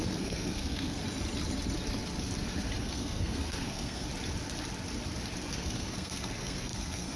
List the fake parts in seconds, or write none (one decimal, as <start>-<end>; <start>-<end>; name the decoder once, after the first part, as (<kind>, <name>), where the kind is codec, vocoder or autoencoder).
0.0-1.0 (codec, SNAC); 2.8-4.1; 5.5-7.2